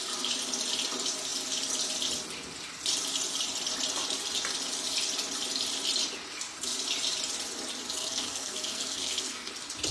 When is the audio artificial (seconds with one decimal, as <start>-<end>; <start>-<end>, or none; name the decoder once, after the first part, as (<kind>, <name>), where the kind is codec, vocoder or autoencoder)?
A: 8.0-9.5 (codec, SNAC)